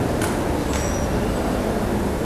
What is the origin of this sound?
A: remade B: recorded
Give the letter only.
B